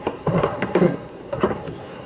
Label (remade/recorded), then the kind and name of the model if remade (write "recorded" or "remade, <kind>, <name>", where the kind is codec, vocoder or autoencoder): remade, codec, SNAC